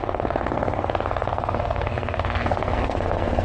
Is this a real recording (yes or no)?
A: no